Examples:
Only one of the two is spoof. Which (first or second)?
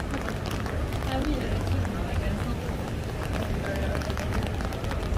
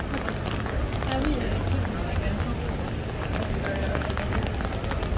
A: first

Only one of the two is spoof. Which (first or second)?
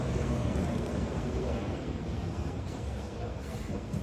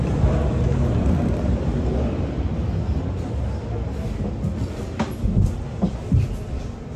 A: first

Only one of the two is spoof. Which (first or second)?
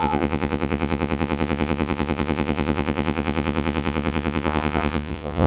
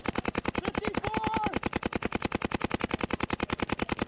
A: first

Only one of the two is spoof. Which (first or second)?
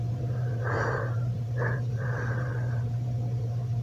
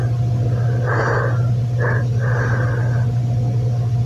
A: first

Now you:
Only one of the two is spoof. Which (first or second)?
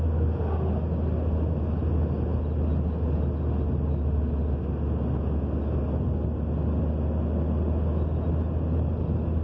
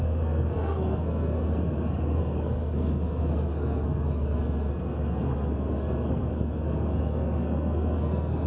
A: second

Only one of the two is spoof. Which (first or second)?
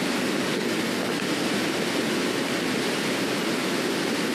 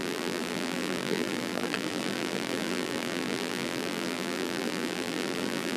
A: second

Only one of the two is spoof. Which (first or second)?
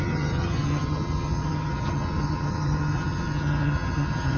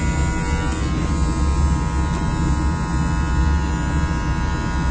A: first